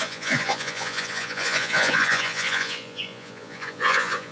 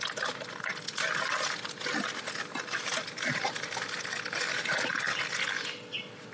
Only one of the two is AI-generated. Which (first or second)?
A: first